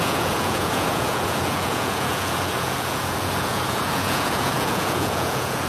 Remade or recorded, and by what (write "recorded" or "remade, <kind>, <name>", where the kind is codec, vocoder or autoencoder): remade, vocoder, Vocos